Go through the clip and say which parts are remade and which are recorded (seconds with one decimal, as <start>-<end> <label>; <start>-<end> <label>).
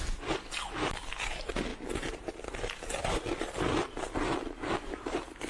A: 0.0-5.5 recorded